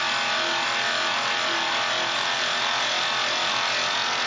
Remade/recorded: recorded